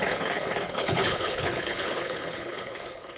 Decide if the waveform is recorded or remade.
remade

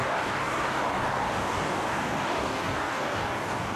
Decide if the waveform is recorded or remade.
remade